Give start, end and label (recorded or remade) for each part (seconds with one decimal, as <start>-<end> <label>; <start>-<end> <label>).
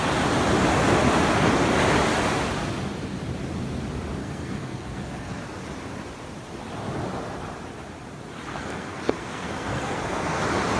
0.0-4.2 recorded; 4.2-5.4 remade; 5.4-8.5 recorded; 8.5-10.4 remade; 10.4-10.8 recorded